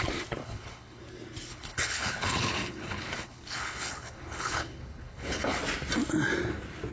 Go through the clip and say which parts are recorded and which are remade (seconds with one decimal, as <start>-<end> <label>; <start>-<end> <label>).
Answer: 0.0-0.4 recorded; 0.4-1.0 remade; 1.0-1.5 recorded; 1.5-5.6 remade; 5.6-6.9 recorded